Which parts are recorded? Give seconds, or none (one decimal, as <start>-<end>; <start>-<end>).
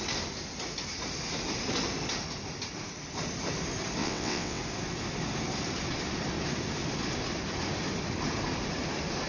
0.0-4.0; 4.6-9.3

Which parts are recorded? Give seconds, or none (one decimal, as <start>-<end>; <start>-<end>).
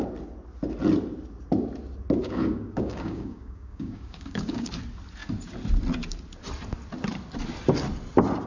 0.0-2.2; 4.7-8.5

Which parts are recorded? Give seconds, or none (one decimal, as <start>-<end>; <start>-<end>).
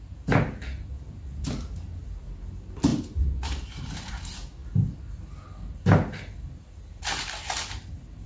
0.0-8.3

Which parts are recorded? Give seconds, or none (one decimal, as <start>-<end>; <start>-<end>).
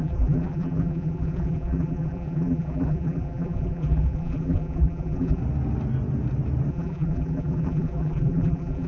5.4-6.7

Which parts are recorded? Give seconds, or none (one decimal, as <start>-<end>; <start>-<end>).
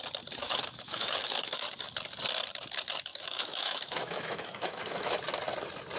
0.0-0.4; 1.6-3.1; 5.2-6.0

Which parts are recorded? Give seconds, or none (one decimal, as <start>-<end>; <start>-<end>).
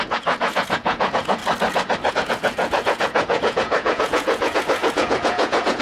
1.4-2.1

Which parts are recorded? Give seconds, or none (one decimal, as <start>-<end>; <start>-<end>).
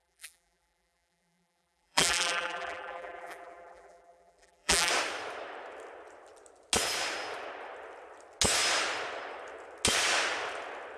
4.9-11.0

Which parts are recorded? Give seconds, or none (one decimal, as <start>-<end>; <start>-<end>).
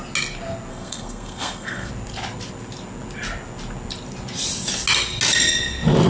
0.0-0.7; 1.9-6.1